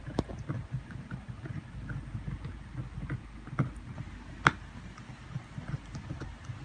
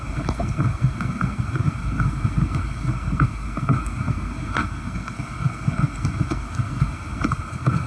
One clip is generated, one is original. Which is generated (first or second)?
second